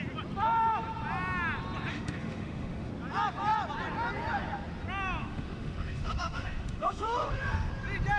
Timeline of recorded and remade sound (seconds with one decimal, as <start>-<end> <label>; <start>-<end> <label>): 0.0-1.9 recorded; 1.9-2.9 remade; 2.9-5.2 recorded; 5.2-7.7 remade; 7.7-8.2 recorded